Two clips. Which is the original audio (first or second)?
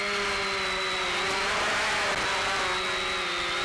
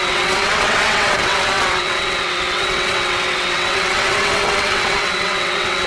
first